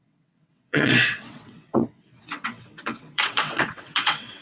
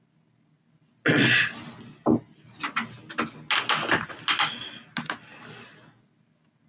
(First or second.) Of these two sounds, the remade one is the first